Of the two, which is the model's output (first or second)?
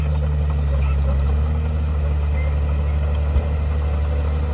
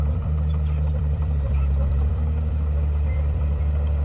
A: second